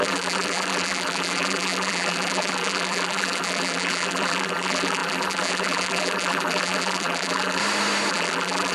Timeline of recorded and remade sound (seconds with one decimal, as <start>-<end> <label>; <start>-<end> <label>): 0.0-7.6 remade; 7.6-8.1 recorded; 8.1-8.7 remade